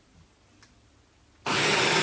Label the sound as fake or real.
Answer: real